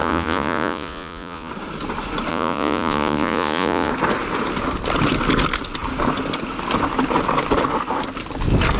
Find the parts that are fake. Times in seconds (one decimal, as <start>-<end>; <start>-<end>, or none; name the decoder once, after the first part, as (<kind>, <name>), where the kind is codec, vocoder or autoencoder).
0.0-1.5 (vocoder, Vocos); 2.3-3.9